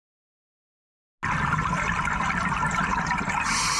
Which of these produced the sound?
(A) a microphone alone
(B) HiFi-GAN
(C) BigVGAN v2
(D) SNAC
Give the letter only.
A